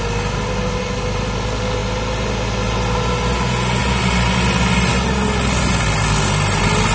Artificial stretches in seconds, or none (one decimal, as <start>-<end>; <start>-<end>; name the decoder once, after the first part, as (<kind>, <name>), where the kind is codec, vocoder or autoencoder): none

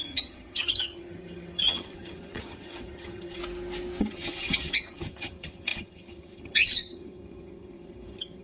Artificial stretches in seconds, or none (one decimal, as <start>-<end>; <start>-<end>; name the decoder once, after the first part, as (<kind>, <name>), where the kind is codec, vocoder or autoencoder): 0.0-3.4 (vocoder, HiFi-GAN); 4.0-8.4

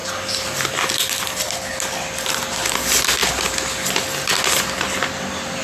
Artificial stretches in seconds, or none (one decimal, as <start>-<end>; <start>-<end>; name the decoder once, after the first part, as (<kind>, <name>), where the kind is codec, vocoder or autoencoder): none

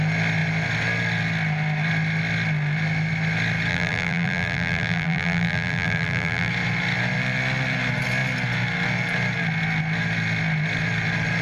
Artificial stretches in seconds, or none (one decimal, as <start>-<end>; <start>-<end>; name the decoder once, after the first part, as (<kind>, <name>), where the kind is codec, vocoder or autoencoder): 3.7-6.5 (vocoder, BigVGAN v2)

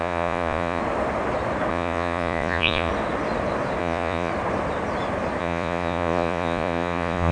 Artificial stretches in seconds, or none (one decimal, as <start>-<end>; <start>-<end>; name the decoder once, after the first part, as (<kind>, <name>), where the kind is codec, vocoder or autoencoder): 0.0-0.8 (vocoder, Vocos); 1.7-2.9; 3.8-4.3; 5.4-7.3

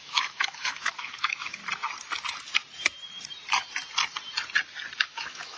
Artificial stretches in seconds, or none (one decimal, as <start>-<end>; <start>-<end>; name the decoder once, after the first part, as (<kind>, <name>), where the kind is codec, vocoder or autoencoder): 0.0-1.6 (autoencoder, DAC-VAE); 5.0-5.6

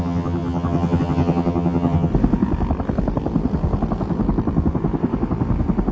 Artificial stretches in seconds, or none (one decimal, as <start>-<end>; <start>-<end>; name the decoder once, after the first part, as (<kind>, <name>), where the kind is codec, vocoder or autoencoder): 0.0-2.1 (vocoder, HiFi-GAN)

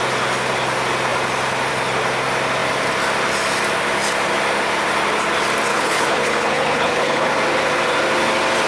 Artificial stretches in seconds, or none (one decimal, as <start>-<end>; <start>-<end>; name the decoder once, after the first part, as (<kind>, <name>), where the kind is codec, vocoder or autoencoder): 5.7-7.3 (codec, HILCodec)